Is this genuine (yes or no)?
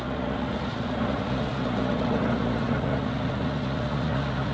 no